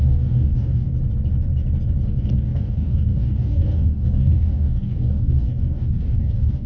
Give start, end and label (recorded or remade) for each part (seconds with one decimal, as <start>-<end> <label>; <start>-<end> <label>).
0.0-0.9 remade; 0.9-2.1 recorded; 2.1-6.7 remade